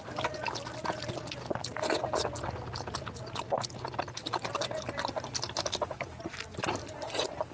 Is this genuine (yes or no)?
yes